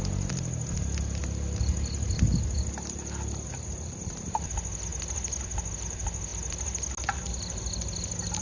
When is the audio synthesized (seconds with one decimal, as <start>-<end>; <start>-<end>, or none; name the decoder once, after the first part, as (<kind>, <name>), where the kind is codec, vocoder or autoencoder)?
none